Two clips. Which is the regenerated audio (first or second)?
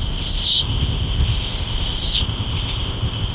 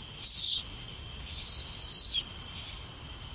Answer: first